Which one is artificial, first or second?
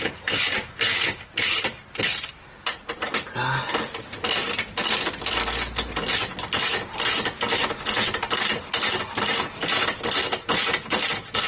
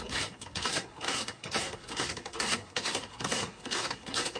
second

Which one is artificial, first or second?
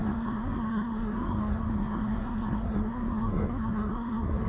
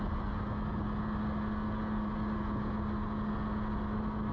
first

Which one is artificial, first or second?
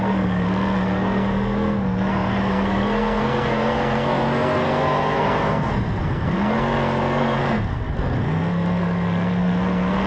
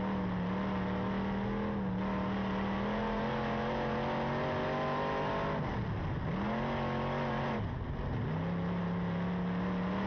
first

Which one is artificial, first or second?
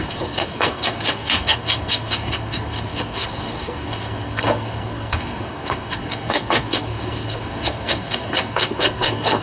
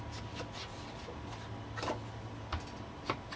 first